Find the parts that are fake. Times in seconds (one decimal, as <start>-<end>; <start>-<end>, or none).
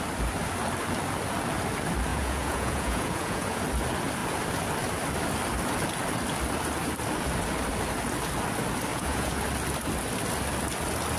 2.1-3.6; 8.9-9.4